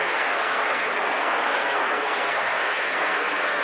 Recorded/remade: remade